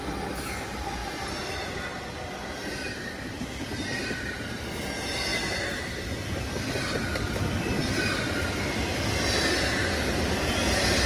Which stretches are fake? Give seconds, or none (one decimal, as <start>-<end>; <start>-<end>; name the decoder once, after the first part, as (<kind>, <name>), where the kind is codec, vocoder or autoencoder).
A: 1.0-3.3 (vocoder, BigVGAN v2); 4.0-4.7; 9.8-10.5